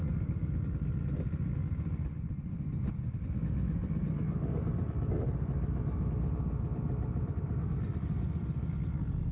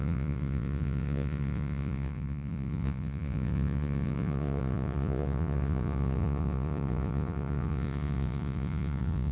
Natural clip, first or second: first